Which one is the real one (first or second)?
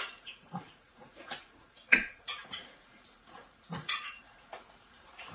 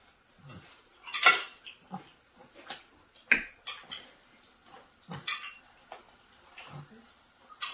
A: second